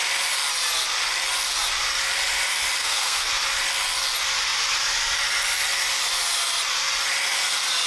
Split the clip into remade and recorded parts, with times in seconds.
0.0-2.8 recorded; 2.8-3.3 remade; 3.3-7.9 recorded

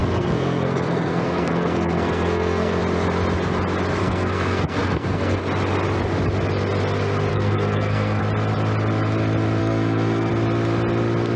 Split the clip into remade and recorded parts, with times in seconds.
0.0-2.8 remade; 2.8-4.0 recorded; 4.0-5.4 remade; 5.4-7.3 recorded; 7.3-8.2 remade; 8.2-9.6 recorded; 9.6-10.3 remade; 10.3-11.4 recorded

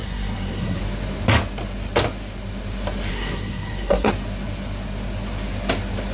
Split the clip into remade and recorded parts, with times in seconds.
0.0-0.8 remade; 0.8-3.1 recorded; 3.1-4.1 remade; 4.1-6.1 recorded

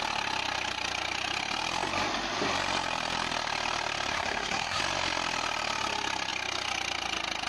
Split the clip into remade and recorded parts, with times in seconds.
0.0-4.1 recorded; 4.1-4.8 remade; 4.8-7.5 recorded